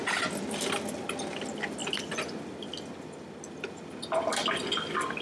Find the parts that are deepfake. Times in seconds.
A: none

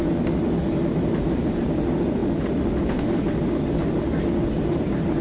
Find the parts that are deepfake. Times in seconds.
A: 0.8-1.3 (vocoder, BigVGAN v2)